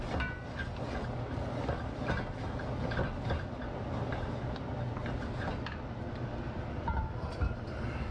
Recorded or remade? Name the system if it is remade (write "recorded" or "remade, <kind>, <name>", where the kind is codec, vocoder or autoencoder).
recorded